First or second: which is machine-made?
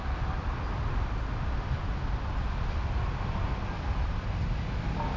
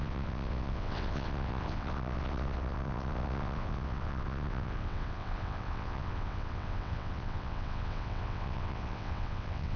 second